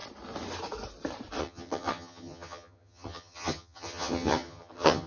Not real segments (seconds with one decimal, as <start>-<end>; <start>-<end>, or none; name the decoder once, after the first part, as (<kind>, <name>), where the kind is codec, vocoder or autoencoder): 1.4-5.1 (vocoder, HiFi-GAN)